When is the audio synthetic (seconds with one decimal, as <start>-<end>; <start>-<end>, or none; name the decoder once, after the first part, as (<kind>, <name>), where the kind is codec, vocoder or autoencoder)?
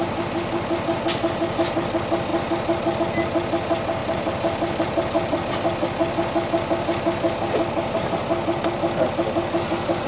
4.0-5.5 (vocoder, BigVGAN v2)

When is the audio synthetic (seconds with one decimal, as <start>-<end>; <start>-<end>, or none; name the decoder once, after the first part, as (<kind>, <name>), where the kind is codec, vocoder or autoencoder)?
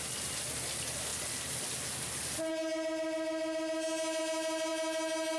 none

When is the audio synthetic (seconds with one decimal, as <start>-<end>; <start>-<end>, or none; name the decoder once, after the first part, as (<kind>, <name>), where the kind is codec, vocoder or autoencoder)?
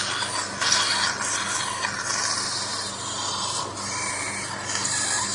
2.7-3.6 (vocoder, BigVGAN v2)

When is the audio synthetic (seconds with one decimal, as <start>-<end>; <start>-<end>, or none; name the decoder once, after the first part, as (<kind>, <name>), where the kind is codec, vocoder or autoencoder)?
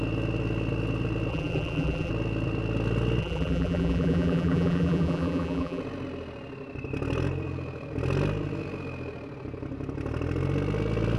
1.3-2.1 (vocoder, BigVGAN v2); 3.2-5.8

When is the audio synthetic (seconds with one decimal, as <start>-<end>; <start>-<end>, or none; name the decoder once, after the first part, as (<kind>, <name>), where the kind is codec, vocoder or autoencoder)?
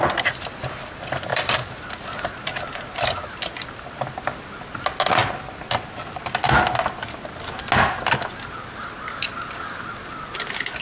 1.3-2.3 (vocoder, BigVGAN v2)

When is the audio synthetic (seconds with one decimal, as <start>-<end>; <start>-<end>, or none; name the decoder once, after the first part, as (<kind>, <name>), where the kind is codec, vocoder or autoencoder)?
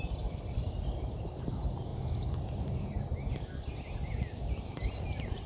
0.0-1.9 (vocoder, BigVGAN v2); 4.7-5.5